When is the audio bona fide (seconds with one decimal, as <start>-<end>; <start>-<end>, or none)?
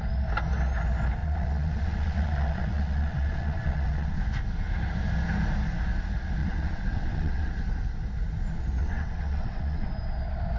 0.0-1.2; 4.2-6.4; 7.5-8.8; 9.9-10.6